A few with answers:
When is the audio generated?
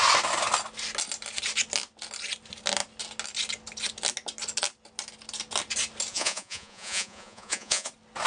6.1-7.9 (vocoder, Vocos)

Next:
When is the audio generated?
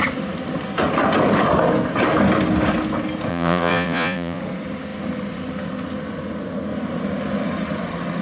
3.3-4.4 (vocoder, Vocos)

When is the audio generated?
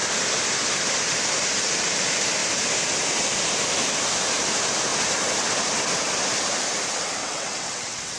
7.2-8.2 (vocoder, WaveNeXt)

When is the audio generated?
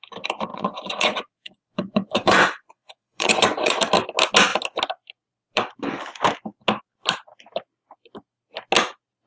0.5-3.8 (vocoder, Vocos)